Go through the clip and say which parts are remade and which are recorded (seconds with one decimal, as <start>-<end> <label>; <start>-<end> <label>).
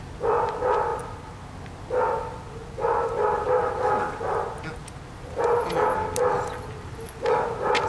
0.0-7.9 recorded